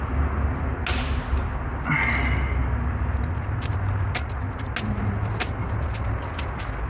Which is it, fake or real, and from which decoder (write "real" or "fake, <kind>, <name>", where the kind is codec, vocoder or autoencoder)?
real